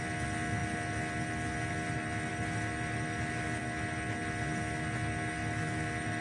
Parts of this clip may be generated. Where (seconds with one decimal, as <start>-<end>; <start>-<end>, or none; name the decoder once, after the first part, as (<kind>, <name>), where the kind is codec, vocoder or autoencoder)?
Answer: 2.3-3.6 (vocoder, BigVGAN v2); 5.4-6.2